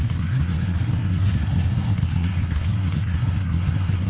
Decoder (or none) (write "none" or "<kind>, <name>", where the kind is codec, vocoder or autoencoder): codec, SNAC